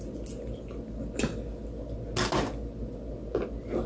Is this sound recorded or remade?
recorded